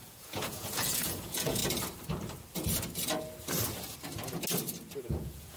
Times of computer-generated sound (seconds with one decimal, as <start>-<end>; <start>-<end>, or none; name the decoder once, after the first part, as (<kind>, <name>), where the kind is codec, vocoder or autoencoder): 0.0-1.6 (vocoder, Vocos); 5.0-5.6